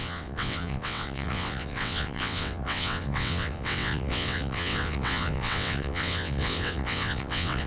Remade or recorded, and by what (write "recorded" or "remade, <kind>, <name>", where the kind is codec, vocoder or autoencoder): remade, vocoder, WaveNeXt